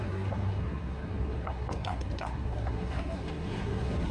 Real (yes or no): no